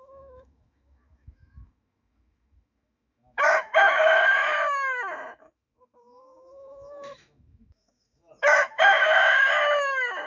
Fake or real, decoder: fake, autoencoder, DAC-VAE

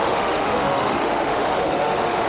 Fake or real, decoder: fake, autoencoder, DAC-VAE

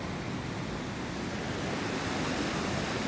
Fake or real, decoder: real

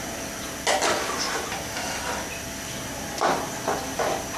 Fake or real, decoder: real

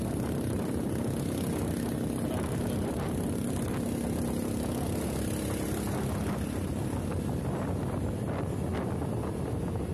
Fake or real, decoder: real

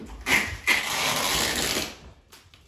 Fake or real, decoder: real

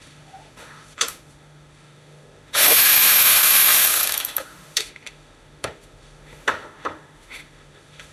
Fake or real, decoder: fake, autoencoder, DAC-VAE